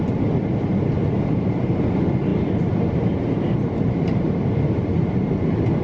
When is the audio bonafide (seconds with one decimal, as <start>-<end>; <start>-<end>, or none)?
0.0-1.0; 1.7-2.3